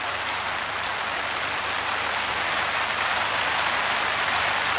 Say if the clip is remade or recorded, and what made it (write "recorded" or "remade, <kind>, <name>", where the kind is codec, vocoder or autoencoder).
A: recorded